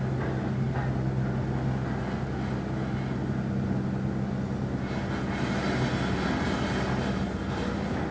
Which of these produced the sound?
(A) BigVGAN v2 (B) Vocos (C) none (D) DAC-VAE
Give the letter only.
C